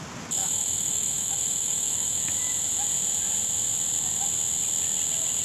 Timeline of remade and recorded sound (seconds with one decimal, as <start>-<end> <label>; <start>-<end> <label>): 0.0-0.4 recorded; 0.4-2.3 remade; 2.3-5.4 recorded